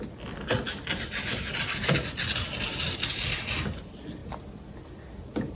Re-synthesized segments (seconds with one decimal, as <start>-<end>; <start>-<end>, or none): none